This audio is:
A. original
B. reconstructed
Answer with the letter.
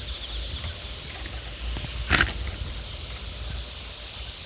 A